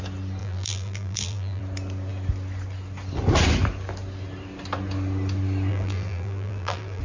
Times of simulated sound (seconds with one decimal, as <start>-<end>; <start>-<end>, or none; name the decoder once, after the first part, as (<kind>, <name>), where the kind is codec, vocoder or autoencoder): 0.4-1.6 (vocoder, BigVGAN v2); 5.7-7.0